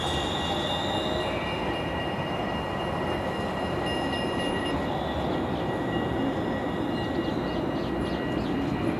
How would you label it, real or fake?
real